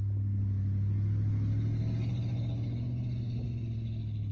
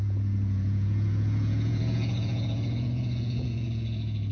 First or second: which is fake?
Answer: second